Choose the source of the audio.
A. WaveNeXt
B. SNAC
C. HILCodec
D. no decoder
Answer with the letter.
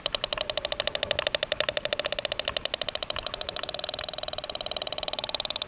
D